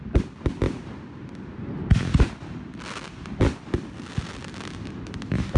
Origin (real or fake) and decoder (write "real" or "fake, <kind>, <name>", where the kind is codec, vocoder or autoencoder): real